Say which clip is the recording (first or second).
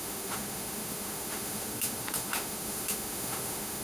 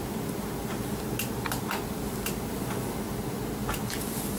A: second